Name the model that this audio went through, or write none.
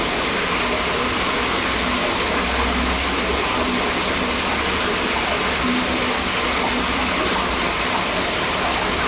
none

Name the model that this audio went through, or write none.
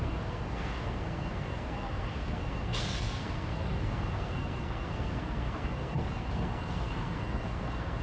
codec, SNAC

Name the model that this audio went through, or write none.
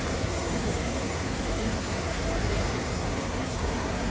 codec, SNAC